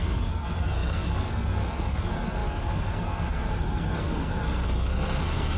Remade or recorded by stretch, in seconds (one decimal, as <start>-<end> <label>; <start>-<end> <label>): 0.0-5.6 remade